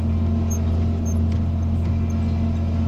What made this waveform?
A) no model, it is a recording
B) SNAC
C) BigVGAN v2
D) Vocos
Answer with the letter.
A